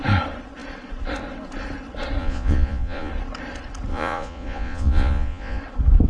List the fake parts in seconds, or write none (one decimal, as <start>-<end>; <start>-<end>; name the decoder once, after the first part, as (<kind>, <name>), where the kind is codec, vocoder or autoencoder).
2.2-3.1 (vocoder, Vocos); 3.9-5.6